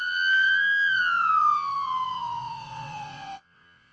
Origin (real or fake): fake